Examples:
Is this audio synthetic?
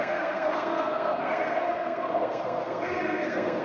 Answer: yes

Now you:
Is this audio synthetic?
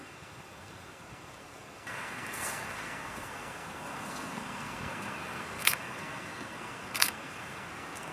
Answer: yes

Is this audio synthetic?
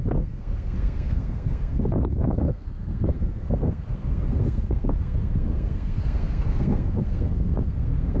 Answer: yes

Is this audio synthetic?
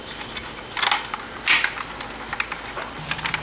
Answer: no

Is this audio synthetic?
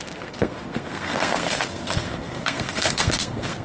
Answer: yes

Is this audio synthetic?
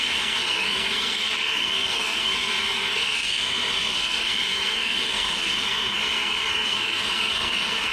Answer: yes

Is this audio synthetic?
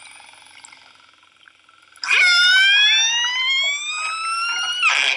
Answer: no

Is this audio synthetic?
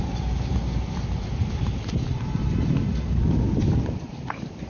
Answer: no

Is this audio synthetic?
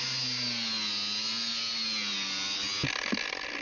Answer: no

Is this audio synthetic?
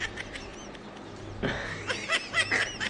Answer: no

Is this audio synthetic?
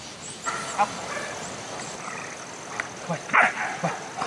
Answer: no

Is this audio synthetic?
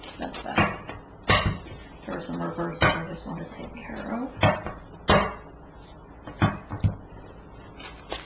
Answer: no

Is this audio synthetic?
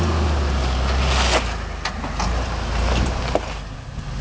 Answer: no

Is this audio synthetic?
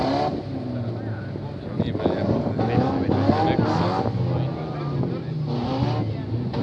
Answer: no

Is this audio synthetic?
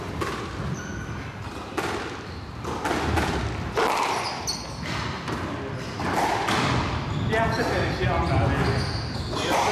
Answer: no